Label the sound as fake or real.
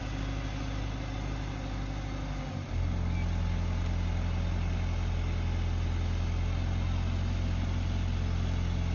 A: real